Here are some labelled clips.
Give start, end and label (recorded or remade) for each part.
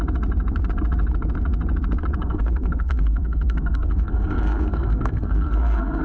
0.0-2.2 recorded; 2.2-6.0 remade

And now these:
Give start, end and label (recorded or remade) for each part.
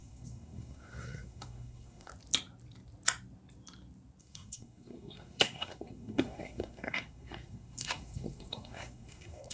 0.0-2.1 remade; 2.1-4.2 recorded; 4.2-9.5 remade